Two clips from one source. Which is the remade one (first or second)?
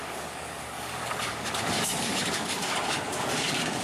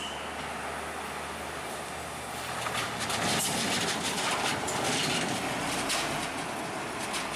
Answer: first